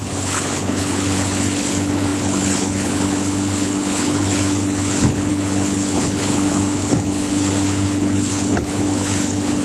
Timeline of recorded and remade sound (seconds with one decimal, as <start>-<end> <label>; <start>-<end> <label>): 0.0-9.6 remade